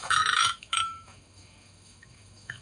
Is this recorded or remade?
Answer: remade